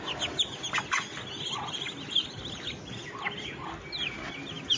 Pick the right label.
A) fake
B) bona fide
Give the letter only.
B